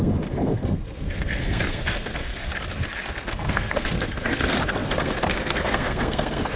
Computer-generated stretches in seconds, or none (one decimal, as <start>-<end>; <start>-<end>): 0.0-2.5; 3.2-6.6